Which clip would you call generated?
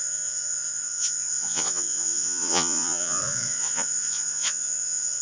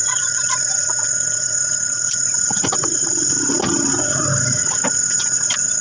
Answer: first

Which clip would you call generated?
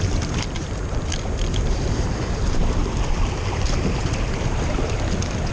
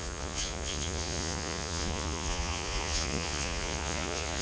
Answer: second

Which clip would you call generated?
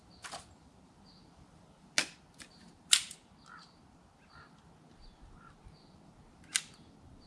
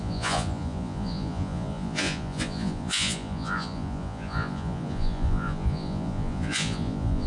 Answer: second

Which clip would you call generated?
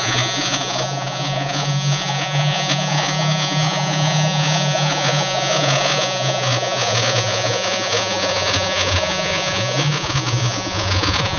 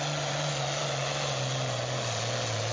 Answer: first